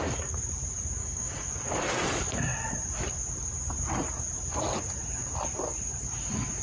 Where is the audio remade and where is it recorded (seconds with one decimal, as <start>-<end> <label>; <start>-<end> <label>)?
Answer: 0.0-1.0 recorded; 1.0-1.5 remade; 1.5-6.6 recorded